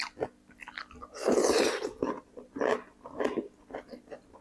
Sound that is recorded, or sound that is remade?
recorded